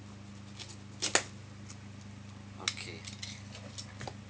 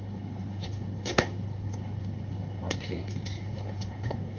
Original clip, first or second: first